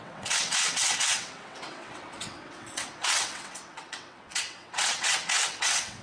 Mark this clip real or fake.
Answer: fake